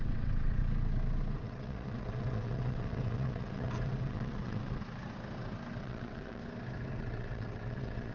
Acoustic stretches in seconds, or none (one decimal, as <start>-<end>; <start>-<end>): 0.6-1.4; 4.8-5.8; 6.4-6.9